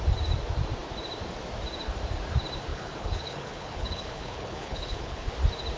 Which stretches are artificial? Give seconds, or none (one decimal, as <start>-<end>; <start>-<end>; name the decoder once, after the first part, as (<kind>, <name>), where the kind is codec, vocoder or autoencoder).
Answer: 2.7-5.3 (codec, HILCodec)